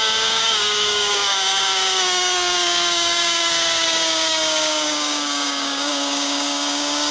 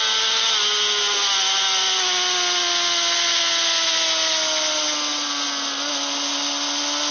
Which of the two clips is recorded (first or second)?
second